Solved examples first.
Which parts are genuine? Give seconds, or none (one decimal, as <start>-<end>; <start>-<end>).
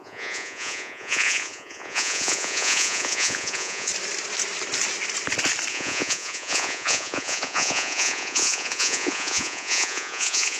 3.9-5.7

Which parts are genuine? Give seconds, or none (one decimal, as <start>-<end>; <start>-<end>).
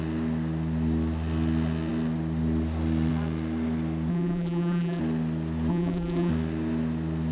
0.0-4.1; 5.0-5.7; 6.3-7.3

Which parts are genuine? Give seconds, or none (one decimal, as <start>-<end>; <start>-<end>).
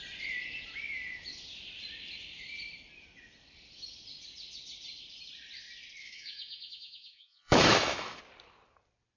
0.0-6.0; 8.2-9.2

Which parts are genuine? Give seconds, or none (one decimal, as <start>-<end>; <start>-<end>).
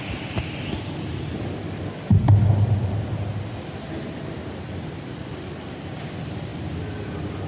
0.0-7.5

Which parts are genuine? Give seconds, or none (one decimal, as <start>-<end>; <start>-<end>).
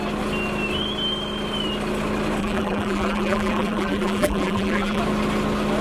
0.0-2.4; 5.0-5.8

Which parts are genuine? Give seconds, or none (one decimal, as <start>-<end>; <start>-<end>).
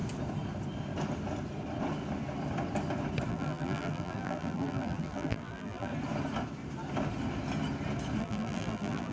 0.0-3.3; 5.9-8.2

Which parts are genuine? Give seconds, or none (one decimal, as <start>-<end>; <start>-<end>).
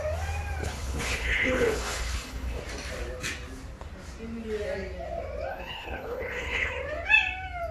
0.0-0.6; 2.6-5.5; 6.7-7.7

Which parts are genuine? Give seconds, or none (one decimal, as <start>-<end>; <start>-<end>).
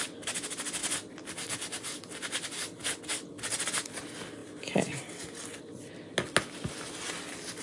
0.0-7.6